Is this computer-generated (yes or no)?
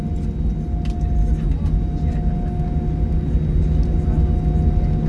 no